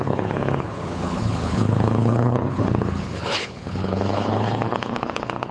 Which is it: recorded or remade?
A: remade